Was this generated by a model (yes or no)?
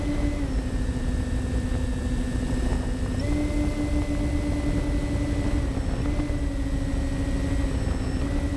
no